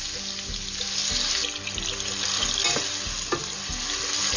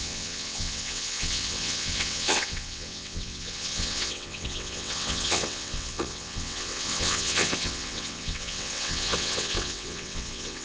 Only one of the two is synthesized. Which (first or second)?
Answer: second